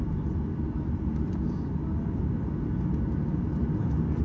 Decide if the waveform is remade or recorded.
recorded